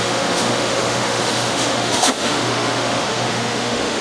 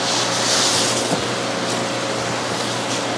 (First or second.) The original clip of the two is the second